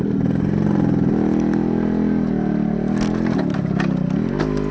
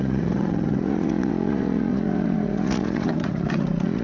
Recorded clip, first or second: first